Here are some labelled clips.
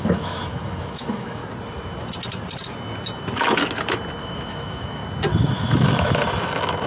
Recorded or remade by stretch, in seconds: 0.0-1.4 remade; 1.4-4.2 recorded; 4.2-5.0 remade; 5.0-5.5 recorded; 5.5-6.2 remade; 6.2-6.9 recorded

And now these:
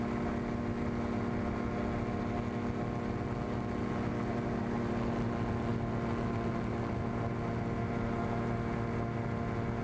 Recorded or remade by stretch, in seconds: 0.0-9.8 recorded

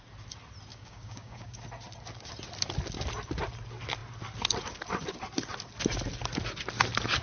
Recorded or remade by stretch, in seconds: 0.0-0.7 recorded; 0.7-1.6 remade; 1.6-7.2 recorded

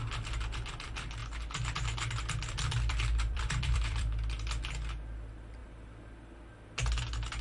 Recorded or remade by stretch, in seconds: 0.0-7.4 remade